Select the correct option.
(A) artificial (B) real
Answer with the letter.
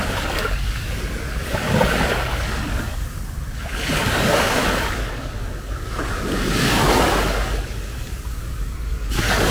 A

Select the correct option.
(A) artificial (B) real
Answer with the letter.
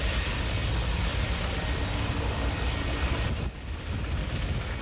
B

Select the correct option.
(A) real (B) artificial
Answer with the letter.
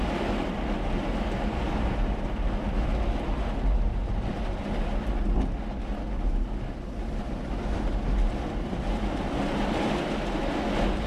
A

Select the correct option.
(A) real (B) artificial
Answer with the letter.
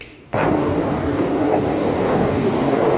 B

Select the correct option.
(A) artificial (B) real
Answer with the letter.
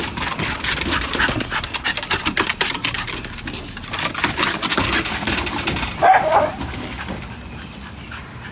B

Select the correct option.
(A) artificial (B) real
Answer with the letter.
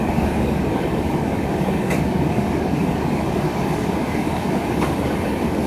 A